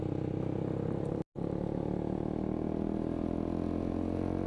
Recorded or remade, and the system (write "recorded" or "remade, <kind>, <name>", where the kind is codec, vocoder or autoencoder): recorded